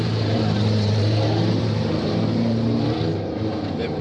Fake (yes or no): yes